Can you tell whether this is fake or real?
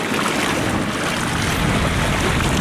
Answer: real